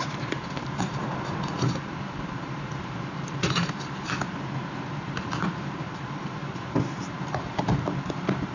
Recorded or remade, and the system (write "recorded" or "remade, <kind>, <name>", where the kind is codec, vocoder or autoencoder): remade, vocoder, BigVGAN v2